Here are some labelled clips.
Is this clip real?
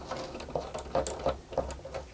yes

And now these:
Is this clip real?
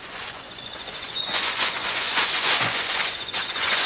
no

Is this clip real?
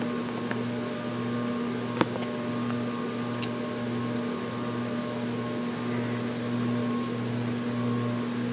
yes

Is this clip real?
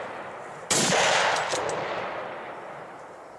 yes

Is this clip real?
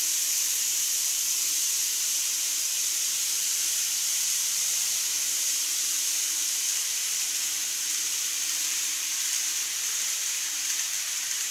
no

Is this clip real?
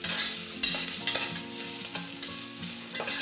yes